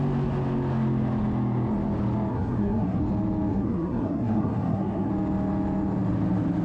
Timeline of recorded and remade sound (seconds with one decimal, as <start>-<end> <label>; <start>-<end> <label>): 0.0-2.3 recorded; 2.3-3.0 remade; 3.0-3.5 recorded; 3.5-5.1 remade; 5.1-6.6 recorded